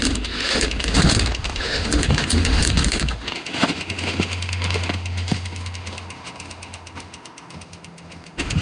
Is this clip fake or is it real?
fake